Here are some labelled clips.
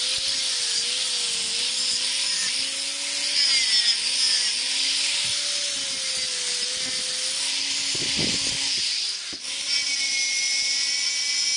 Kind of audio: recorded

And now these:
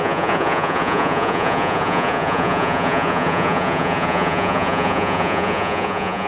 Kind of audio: remade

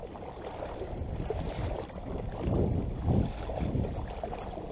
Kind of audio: recorded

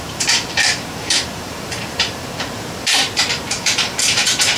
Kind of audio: remade